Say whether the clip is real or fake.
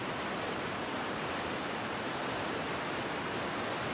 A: real